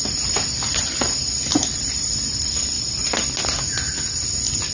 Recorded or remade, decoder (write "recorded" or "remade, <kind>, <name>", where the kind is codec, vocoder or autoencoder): recorded